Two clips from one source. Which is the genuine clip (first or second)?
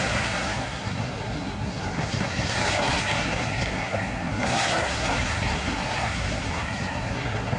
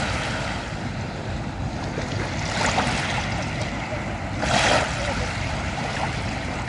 second